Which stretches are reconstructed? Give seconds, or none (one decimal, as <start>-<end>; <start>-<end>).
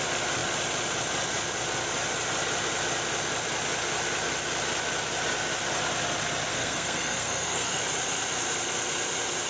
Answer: 6.5-7.8